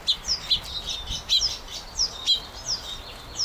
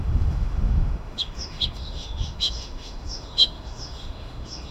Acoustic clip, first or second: first